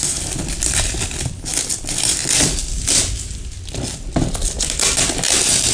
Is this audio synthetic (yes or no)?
no